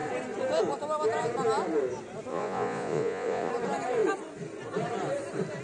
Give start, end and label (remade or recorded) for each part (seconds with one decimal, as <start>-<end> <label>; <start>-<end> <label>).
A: 0.0-2.3 recorded; 2.3-3.5 remade; 3.5-5.6 recorded